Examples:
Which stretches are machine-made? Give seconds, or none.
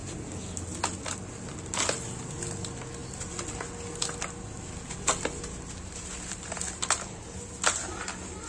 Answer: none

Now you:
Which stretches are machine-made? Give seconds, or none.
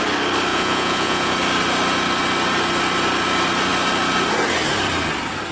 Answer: 0.5-1.3 (vocoder, Vocos)